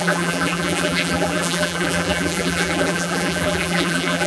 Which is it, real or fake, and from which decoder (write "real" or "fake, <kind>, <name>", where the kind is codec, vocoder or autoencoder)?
fake, vocoder, BigVGAN v2